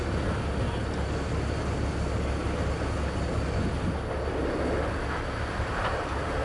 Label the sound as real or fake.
real